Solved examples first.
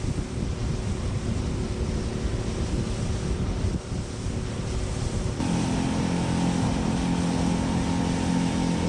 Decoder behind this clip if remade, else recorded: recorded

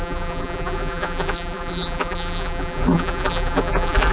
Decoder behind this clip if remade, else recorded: remade, vocoder, BigVGAN v2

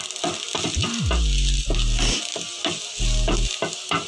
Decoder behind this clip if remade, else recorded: recorded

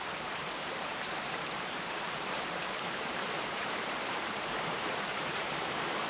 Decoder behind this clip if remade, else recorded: remade, vocoder, BigVGAN v2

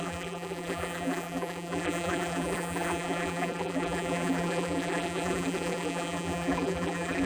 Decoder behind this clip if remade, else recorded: remade, vocoder, BigVGAN v2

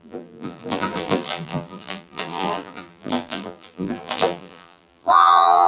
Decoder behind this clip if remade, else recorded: remade, vocoder, BigVGAN v2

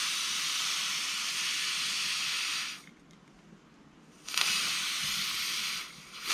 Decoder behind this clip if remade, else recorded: recorded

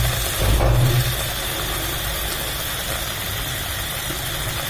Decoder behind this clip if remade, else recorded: recorded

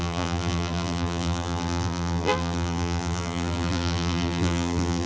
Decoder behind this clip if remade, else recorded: remade, vocoder, BigVGAN v2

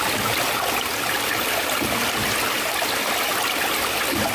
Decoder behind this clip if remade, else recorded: recorded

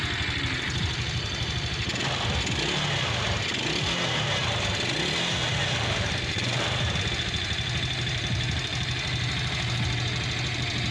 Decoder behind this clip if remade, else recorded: recorded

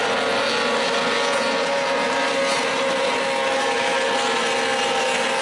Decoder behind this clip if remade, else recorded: recorded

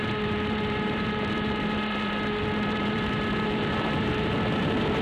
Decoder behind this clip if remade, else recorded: remade, vocoder, BigVGAN v2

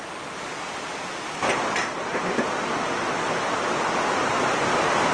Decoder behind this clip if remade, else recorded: recorded